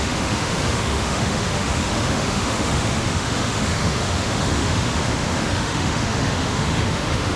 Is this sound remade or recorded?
remade